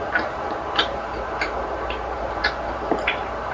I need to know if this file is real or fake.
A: fake